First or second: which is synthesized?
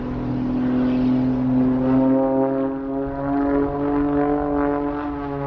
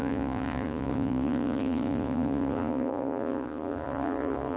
second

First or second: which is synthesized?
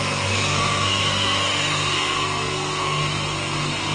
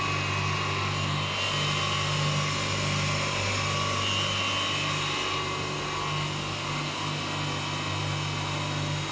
first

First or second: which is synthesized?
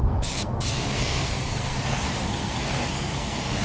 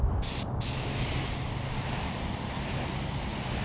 first